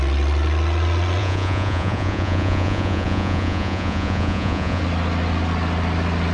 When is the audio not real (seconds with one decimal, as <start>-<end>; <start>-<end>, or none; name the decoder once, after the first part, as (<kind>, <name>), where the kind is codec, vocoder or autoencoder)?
1.2-4.8 (vocoder, Vocos)